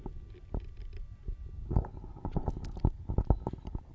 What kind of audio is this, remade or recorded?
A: recorded